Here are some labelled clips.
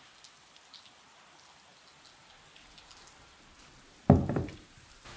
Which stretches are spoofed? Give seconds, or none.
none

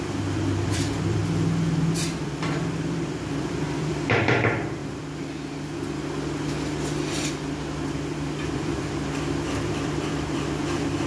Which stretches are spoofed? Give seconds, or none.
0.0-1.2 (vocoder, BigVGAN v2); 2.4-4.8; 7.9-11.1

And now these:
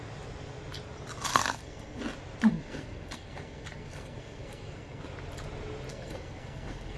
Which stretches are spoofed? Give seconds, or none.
1.3-2.0 (codec, SNAC); 2.5-5.0; 5.9-7.0

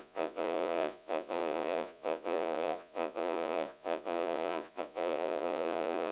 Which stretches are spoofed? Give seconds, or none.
0.0-6.1 (vocoder, Vocos)

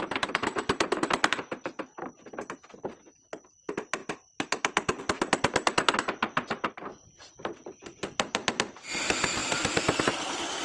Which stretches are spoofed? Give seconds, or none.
4.0-5.0 (vocoder, BigVGAN v2); 9.4-10.0

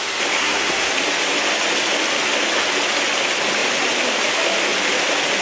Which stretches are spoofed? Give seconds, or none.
0.4-0.9 (codec, SNAC)